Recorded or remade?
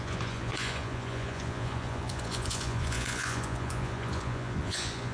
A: remade